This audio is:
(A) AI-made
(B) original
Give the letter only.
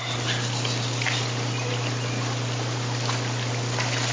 B